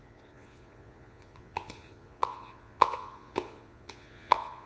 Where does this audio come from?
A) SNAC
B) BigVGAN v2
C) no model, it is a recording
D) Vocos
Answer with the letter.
D